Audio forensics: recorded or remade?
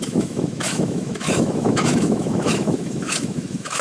remade